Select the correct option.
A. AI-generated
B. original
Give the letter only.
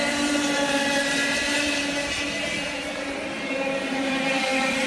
A